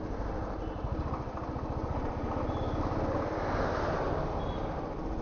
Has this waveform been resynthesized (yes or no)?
no